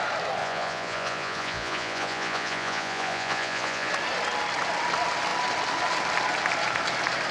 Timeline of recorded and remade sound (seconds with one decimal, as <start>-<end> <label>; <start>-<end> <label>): 0.0-0.4 recorded; 0.4-3.9 remade; 3.9-7.3 recorded